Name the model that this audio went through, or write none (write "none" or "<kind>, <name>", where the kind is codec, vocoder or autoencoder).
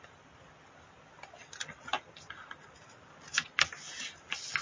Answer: none